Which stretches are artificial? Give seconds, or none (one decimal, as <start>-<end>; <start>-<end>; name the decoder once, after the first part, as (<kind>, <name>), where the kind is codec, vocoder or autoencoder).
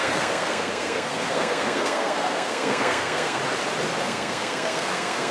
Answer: 0.0-3.4 (codec, SNAC); 4.0-5.3